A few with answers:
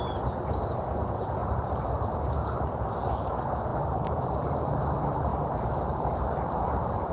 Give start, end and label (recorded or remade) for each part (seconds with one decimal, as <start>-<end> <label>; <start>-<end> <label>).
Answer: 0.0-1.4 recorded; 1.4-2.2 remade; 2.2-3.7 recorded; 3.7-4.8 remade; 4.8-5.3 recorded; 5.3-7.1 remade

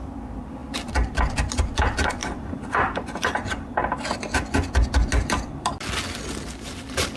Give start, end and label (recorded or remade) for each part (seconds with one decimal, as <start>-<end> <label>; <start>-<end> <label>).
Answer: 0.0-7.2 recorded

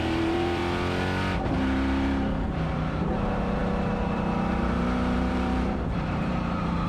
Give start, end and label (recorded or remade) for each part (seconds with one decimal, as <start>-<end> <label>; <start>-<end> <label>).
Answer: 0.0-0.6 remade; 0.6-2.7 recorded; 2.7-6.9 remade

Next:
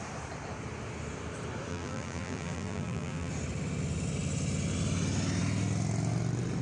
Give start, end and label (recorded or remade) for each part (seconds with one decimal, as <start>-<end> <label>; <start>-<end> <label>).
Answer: 0.0-1.7 recorded; 1.7-3.3 remade; 3.3-6.6 recorded

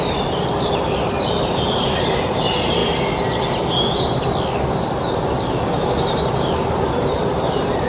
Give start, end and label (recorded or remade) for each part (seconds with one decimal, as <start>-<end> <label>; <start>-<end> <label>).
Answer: 0.0-2.8 remade; 2.8-5.5 recorded; 5.5-7.9 remade

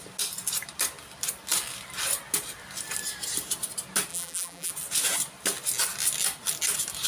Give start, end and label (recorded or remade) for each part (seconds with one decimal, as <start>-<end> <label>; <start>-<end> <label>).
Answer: 0.0-4.1 recorded; 4.1-4.7 remade; 4.7-7.1 recorded